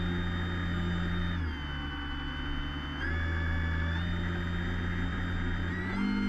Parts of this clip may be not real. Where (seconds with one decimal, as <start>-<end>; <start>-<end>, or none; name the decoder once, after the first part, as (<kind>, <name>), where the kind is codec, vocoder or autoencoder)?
5.1-5.8 (vocoder, BigVGAN v2)